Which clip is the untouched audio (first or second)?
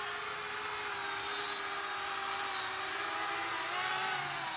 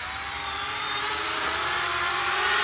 first